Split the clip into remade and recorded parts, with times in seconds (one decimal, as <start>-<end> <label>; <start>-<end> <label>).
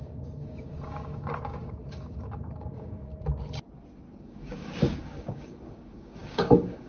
0.0-3.1 remade; 3.1-4.1 recorded; 4.1-6.9 remade